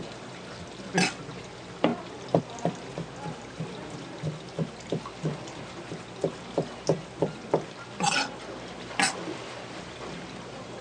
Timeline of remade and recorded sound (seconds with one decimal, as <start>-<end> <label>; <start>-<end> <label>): 0.0-10.8 recorded

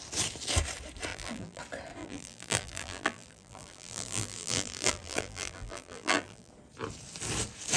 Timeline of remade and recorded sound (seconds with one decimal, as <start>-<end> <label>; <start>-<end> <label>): 0.0-1.1 recorded; 1.1-1.6 remade; 1.6-2.0 recorded; 2.0-6.5 remade; 6.5-7.8 recorded

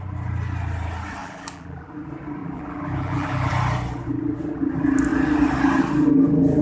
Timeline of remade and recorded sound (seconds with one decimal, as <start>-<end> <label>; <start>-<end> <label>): 0.0-1.2 recorded; 1.2-1.9 remade; 1.9-2.4 recorded; 2.4-3.5 remade; 3.5-6.6 recorded

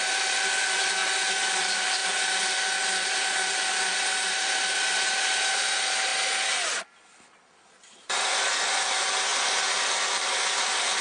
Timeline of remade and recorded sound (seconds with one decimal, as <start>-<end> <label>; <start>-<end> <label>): 0.0-1.0 remade; 1.0-1.6 recorded; 1.6-2.0 remade; 2.0-3.7 recorded; 3.7-6.1 remade; 6.1-7.4 recorded; 7.4-11.0 remade